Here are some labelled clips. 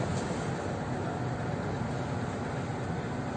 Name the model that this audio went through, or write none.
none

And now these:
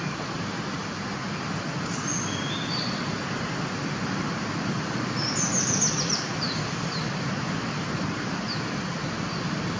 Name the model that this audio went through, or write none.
none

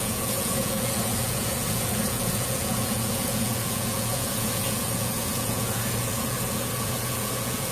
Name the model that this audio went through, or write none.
vocoder, Vocos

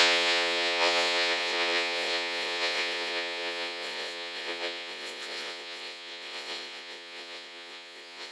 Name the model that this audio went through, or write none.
vocoder, Vocos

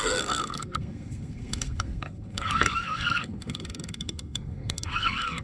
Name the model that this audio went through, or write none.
codec, SNAC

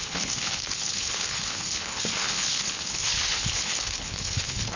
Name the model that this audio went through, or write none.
codec, HILCodec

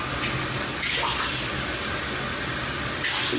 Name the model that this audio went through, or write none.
none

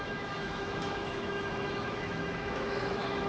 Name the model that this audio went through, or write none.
autoencoder, DAC-VAE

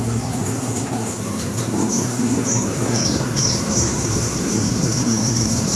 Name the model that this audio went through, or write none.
codec, SNAC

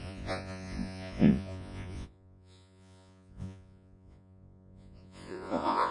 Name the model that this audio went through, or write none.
vocoder, Vocos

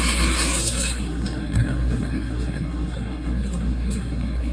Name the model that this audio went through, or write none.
codec, SNAC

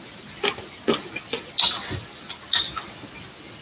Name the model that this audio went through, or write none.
none